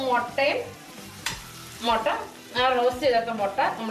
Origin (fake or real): fake